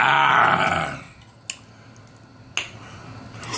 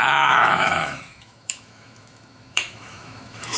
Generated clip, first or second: second